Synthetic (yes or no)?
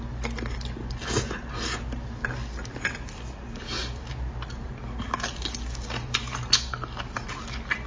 no